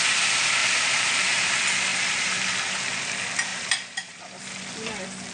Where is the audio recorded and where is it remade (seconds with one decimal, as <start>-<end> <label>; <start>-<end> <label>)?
0.0-0.6 recorded; 0.6-1.5 remade; 1.5-1.9 recorded; 1.9-2.5 remade; 2.5-3.5 recorded; 3.5-4.4 remade; 4.4-5.3 recorded